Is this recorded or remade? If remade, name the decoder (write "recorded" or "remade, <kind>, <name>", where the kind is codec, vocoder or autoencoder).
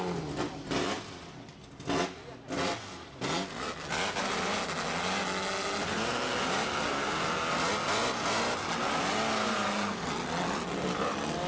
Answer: recorded